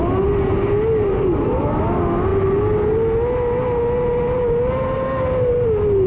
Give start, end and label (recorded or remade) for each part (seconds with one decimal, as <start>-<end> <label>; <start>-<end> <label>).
0.0-6.1 recorded